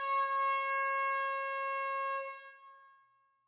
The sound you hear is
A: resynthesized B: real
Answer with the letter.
B